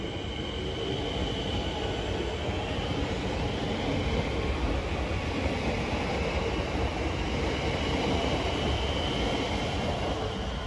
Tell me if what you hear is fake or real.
real